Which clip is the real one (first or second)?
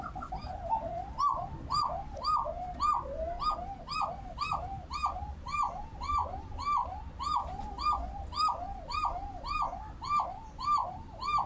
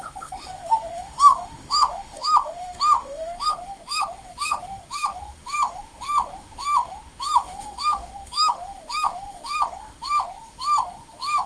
first